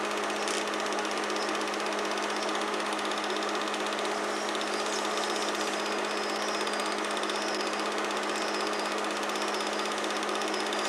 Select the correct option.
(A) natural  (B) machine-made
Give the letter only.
A